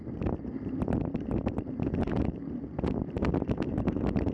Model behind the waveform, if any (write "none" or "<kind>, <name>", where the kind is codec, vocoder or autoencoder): vocoder, BigVGAN v2